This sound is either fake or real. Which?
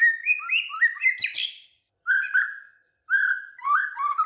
fake